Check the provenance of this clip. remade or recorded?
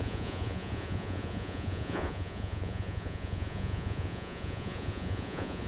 remade